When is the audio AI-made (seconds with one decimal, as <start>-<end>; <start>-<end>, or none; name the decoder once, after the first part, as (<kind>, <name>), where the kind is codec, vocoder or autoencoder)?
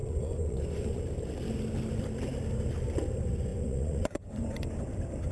0.0-1.0 (vocoder, Vocos); 3.5-4.8